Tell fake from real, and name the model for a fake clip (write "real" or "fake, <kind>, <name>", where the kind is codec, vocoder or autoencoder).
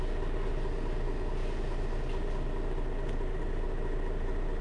real